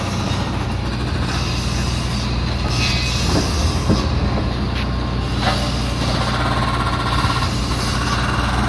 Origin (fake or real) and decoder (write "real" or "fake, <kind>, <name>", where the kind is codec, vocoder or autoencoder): real